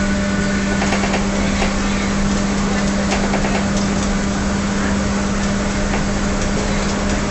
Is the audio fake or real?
real